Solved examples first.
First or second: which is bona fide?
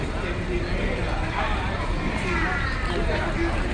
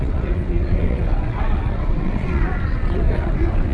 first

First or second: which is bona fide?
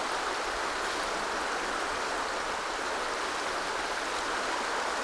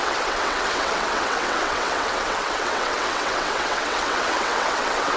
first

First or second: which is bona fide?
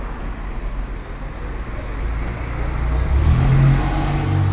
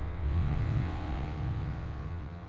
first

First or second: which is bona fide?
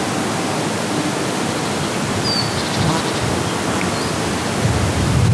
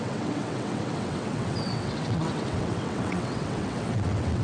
first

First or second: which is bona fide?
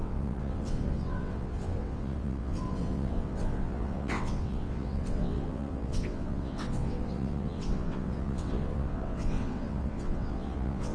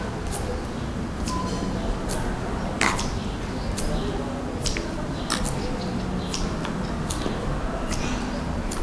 second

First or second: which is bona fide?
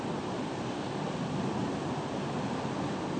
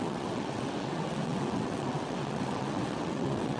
first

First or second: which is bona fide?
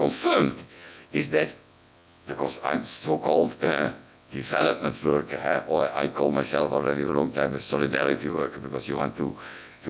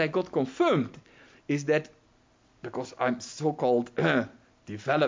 second